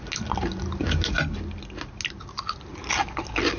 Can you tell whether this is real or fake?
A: real